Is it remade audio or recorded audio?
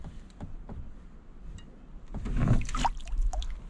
recorded